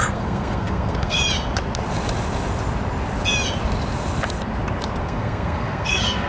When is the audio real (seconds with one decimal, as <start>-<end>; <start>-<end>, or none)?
1.2-5.0